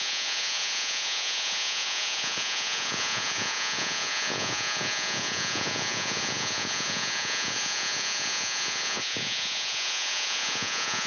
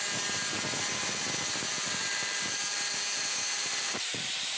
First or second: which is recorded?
second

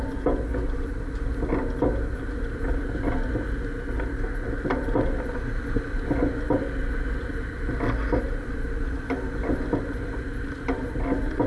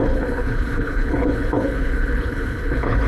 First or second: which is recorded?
first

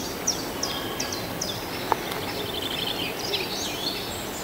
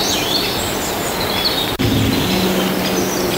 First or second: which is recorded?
first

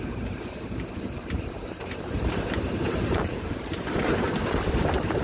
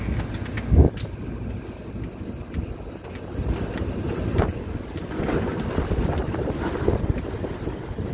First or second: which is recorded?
second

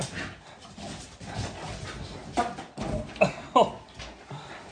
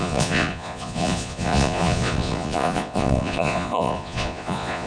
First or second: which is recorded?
first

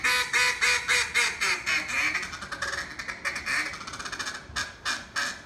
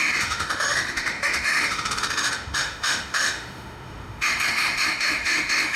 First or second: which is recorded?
first